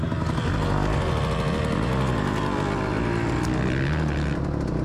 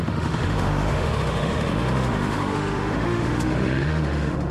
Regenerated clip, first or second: second